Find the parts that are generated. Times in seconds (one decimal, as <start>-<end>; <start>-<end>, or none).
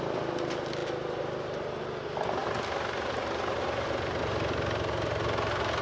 none